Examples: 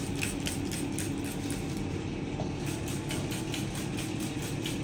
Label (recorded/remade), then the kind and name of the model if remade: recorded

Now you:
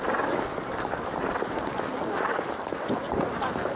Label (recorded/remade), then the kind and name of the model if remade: recorded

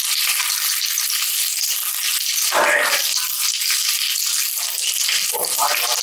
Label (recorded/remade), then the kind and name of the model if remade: recorded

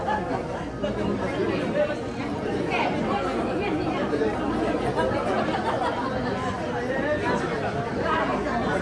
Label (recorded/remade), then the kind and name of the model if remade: recorded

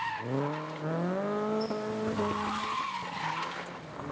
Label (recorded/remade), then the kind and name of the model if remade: recorded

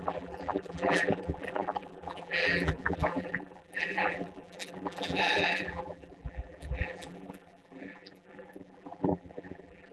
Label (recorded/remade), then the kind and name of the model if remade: remade, vocoder, BigVGAN v2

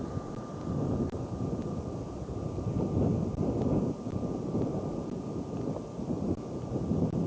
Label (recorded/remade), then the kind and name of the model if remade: remade, vocoder, BigVGAN v2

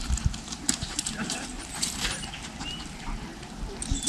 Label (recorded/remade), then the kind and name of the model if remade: remade, vocoder, BigVGAN v2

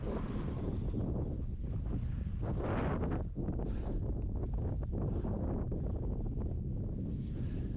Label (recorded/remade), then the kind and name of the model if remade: recorded